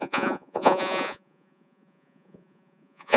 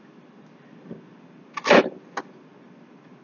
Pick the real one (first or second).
second